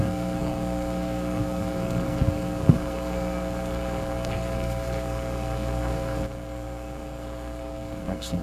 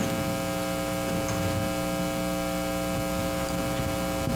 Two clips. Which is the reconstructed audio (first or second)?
first